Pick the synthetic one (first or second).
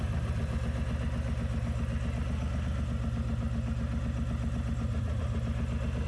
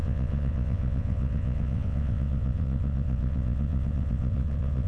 second